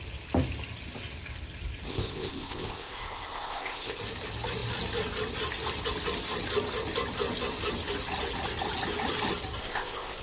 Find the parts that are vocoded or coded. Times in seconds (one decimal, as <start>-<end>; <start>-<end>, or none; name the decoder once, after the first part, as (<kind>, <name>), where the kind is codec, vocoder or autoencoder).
1.9-4.0 (codec, ZipCodec); 9.6-10.2